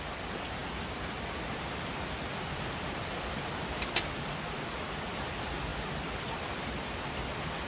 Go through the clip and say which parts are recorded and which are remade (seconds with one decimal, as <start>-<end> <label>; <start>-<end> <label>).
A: 0.0-7.7 recorded